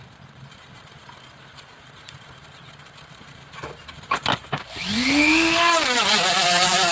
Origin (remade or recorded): remade